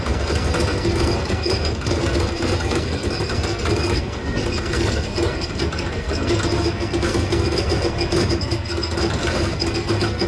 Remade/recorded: remade